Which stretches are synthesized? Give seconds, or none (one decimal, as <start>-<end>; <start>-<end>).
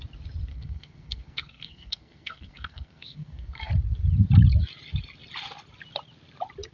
0.5-3.7